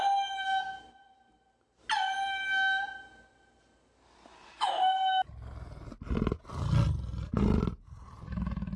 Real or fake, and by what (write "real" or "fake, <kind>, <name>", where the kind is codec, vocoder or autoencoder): real